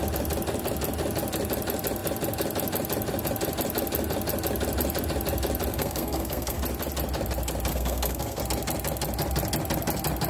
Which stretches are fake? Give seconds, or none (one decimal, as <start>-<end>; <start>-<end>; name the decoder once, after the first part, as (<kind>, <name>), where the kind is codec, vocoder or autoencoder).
5.7-6.6 (codec, SNAC); 7.7-8.4